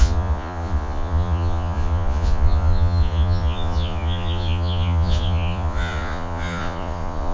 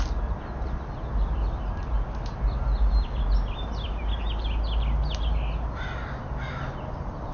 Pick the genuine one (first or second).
second